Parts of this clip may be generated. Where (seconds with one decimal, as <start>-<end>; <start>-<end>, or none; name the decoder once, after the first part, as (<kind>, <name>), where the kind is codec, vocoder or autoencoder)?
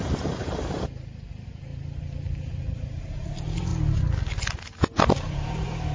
0.0-3.7 (vocoder, BigVGAN v2); 5.1-5.9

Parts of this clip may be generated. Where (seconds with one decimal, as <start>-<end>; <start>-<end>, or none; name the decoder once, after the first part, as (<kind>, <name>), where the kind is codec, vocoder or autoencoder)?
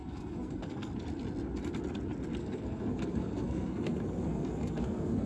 0.0-0.9 (codec, SNAC); 2.4-5.3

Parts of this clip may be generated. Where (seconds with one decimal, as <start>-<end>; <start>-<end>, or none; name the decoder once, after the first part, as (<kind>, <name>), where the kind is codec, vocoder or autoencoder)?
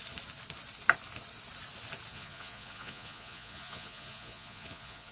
2.1-5.1 (vocoder, Vocos)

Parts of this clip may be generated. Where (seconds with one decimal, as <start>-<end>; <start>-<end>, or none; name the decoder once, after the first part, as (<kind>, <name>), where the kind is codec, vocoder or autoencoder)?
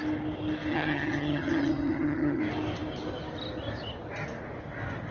0.7-2.4 (vocoder, HiFi-GAN)